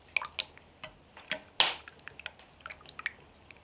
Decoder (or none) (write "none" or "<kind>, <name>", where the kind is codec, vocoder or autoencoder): none